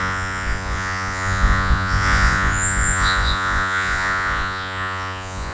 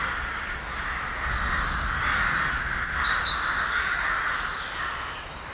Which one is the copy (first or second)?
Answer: first